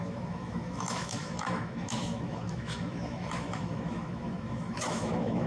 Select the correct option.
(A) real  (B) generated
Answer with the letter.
B